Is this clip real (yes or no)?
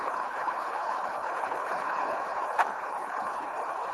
no